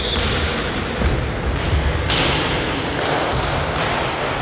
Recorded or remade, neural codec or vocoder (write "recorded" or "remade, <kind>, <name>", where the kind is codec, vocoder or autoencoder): recorded